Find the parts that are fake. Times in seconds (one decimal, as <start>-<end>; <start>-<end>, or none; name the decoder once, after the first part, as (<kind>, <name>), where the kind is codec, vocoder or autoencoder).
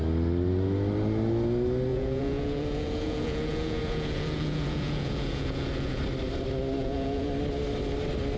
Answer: 1.9-6.0 (vocoder, Vocos); 6.8-7.3